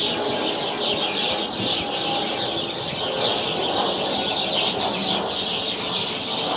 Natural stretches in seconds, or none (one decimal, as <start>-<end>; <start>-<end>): 0.0-6.6